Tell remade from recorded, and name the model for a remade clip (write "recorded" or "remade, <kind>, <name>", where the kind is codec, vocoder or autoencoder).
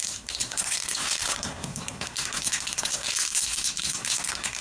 remade, codec, SNAC